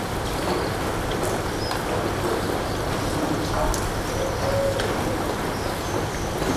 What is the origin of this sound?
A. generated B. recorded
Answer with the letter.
B